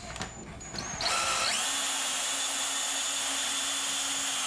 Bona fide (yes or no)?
yes